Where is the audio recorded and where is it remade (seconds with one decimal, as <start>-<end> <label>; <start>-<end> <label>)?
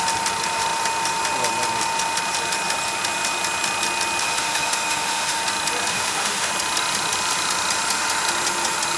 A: 0.0-4.2 recorded; 4.2-5.4 remade; 5.4-5.9 recorded; 5.9-6.5 remade; 6.5-9.0 recorded